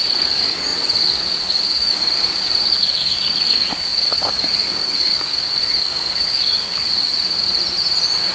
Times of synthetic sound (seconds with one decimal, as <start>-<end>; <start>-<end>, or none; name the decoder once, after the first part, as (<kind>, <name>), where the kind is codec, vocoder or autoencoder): 0.0-7.1 (codec, DAC)